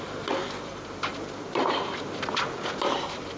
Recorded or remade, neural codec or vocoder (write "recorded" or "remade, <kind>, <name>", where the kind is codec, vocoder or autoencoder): remade, vocoder, BigVGAN v2